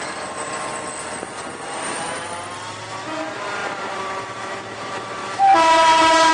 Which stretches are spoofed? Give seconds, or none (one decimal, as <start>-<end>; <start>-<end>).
0.0-0.7; 1.3-6.3